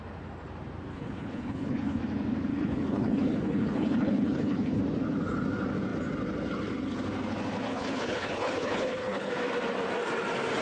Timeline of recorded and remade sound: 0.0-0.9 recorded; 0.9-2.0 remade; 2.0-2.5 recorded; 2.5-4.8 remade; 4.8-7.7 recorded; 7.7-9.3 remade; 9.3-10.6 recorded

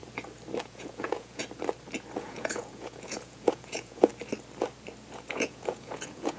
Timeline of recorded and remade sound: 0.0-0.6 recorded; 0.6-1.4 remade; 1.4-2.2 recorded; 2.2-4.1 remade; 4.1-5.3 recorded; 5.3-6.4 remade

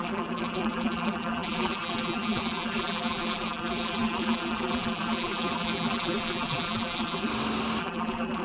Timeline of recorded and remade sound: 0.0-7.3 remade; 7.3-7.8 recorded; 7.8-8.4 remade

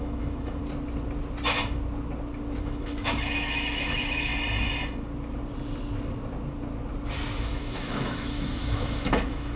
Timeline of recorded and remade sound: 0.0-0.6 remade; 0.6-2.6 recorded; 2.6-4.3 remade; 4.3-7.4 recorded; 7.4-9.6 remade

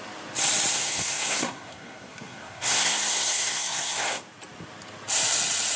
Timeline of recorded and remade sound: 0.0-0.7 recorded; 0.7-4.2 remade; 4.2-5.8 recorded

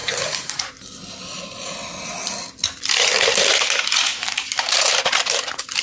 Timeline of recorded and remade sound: 0.0-0.7 remade; 0.7-4.1 recorded; 4.1-5.1 remade; 5.1-5.8 recorded